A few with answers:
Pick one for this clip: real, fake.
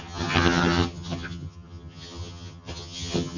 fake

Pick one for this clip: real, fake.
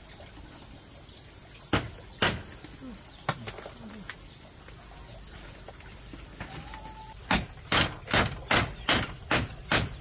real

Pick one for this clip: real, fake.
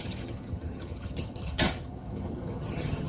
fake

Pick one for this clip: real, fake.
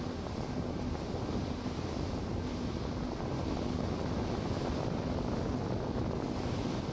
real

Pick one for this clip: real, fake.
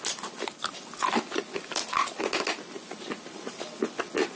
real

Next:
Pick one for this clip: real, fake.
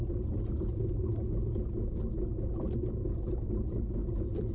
real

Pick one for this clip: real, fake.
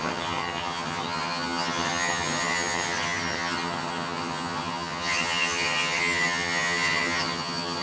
fake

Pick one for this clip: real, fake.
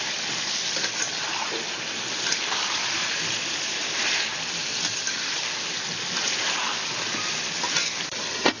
real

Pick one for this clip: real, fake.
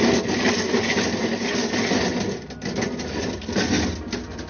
real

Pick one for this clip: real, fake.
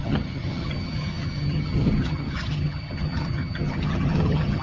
fake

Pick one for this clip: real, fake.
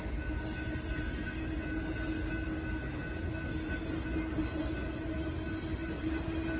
real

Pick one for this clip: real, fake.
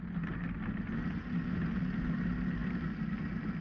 real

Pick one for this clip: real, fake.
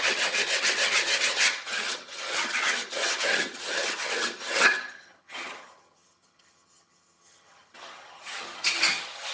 fake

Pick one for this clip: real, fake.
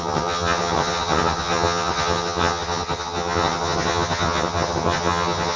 fake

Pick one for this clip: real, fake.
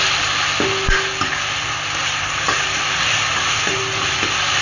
real